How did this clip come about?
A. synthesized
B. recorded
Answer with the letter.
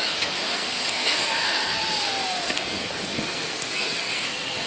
A